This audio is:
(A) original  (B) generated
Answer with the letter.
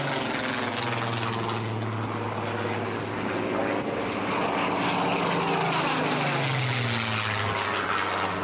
A